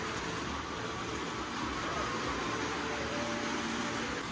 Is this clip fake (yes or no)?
no